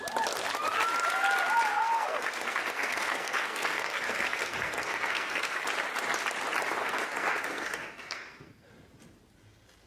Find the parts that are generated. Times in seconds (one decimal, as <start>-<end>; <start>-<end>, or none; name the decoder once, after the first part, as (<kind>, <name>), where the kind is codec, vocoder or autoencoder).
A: 1.7-5.6 (codec, SNAC); 6.8-8.7